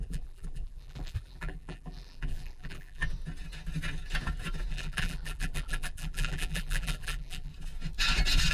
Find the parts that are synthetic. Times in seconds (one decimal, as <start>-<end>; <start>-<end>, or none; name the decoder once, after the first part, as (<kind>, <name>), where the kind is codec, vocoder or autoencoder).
0.0-3.0 (vocoder, BigVGAN v2); 4.7-7.5